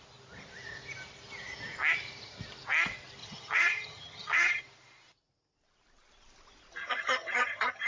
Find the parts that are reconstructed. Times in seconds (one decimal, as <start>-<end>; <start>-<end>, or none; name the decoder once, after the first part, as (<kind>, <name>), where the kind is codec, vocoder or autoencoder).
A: 3.2-4.6 (vocoder, HiFi-GAN); 6.8-7.9